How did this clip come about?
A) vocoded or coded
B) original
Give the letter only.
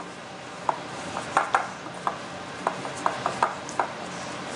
B